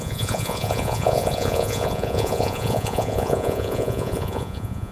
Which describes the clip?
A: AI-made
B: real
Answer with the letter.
A